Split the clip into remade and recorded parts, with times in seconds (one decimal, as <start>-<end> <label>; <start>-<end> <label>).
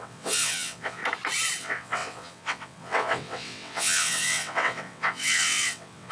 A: 0.0-1.0 remade; 1.0-1.6 recorded; 1.6-6.1 remade